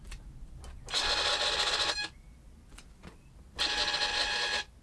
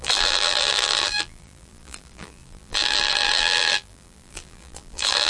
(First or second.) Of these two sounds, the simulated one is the second